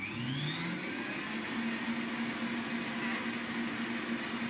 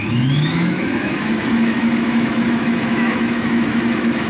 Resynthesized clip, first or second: second